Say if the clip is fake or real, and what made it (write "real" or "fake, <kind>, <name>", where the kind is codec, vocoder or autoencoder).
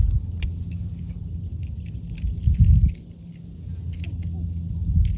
real